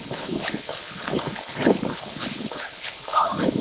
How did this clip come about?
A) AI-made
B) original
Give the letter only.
A